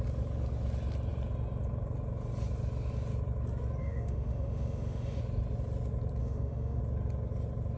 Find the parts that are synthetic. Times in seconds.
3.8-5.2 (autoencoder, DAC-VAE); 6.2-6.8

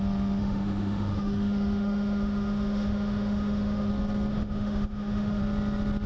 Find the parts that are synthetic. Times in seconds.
0.4-3.9 (autoencoder, DAC-VAE); 4.3-5.4